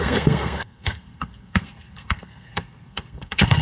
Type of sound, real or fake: fake